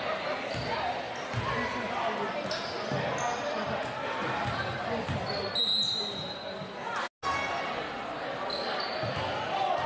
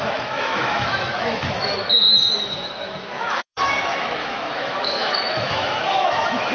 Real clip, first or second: first